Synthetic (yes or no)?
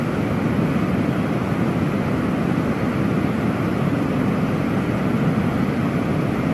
no